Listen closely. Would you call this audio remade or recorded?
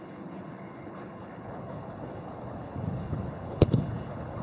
remade